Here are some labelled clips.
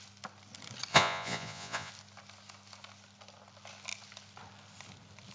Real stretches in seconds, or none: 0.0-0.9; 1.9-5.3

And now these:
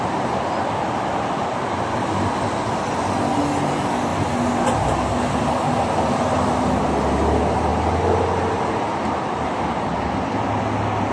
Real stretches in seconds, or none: 0.0-11.1

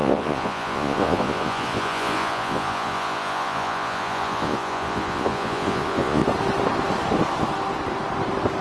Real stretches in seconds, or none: 6.2-8.6

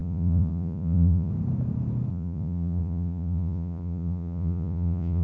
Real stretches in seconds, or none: 1.3-2.1